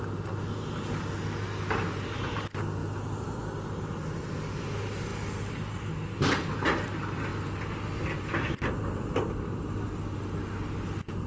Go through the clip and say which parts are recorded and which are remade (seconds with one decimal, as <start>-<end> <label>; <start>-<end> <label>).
0.0-11.3 recorded